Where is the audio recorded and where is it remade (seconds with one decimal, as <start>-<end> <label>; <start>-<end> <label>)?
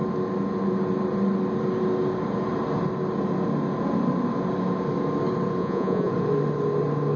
0.0-5.6 recorded; 5.6-6.1 remade; 6.1-7.2 recorded